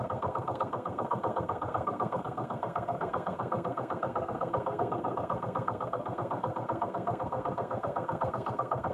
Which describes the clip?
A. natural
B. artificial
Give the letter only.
B